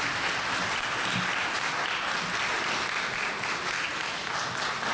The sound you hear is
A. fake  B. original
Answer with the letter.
B